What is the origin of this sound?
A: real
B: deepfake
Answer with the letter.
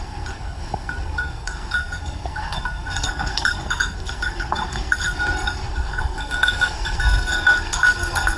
B